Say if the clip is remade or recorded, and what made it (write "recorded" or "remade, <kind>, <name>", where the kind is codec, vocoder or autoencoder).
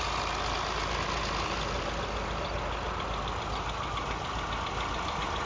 recorded